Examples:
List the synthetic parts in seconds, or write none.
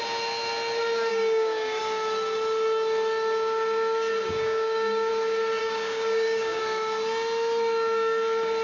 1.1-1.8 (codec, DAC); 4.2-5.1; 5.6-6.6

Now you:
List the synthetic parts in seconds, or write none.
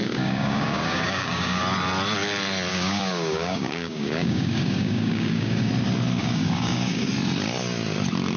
0.0-1.6 (codec, DAC); 2.7-5.7; 6.2-7.1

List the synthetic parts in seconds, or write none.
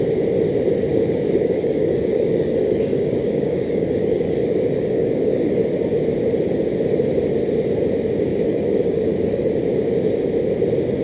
0.9-5.6 (codec, DAC); 8.3-9.5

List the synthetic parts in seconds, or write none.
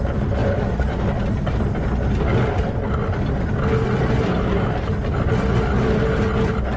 none